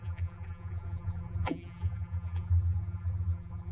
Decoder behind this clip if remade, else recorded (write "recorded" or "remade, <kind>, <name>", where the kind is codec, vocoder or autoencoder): remade, vocoder, BigVGAN v2